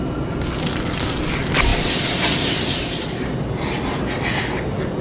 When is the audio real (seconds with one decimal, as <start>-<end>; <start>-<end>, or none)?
0.0-5.0